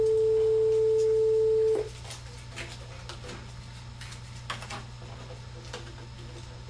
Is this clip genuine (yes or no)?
yes